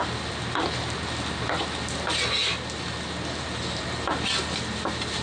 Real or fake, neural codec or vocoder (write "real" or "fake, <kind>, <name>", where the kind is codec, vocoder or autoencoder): real